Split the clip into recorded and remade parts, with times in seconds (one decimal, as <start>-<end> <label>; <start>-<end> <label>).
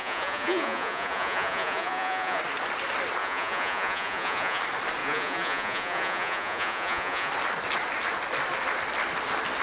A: 0.0-2.4 remade; 2.4-3.2 recorded; 3.2-4.6 remade; 4.6-5.0 recorded; 5.0-7.3 remade; 7.3-9.6 recorded